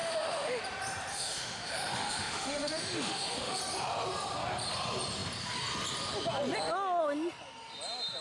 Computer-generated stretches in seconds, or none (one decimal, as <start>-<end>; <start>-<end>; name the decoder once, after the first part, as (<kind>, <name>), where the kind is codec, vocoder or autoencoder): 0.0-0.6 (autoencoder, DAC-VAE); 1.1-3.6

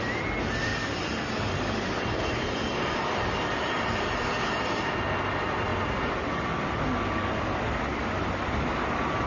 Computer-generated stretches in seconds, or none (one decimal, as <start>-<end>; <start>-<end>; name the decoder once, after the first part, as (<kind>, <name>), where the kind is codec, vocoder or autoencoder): 0.7-5.3 (vocoder, BigVGAN v2)

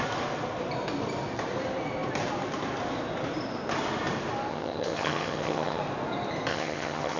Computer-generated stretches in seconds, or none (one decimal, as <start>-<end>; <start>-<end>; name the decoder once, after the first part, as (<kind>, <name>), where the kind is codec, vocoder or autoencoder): 4.5-5.8 (vocoder, HiFi-GAN); 6.5-7.2